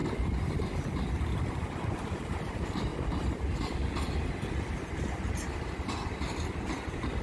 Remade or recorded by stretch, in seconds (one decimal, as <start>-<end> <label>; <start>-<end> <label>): 0.0-1.9 recorded; 1.9-2.9 remade; 2.9-5.9 recorded; 5.9-7.2 remade